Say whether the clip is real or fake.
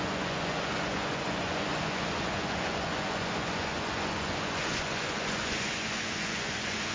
fake